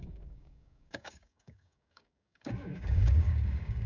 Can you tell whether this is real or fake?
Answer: fake